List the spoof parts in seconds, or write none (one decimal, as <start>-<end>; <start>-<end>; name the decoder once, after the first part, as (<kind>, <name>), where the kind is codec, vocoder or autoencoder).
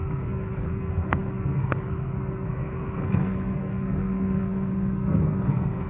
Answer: 0.0-5.9 (codec, SNAC)